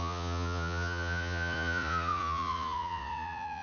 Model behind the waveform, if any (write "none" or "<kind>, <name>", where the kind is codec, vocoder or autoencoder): vocoder, Vocos